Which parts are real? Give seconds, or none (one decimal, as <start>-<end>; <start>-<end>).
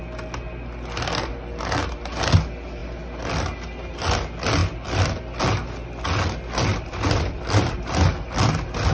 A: 0.0-4.6; 5.4-6.7; 8.1-8.9